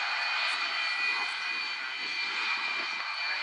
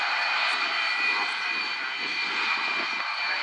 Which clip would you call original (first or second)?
first